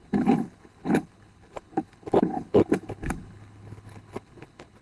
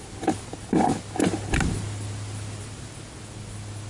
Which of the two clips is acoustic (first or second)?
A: second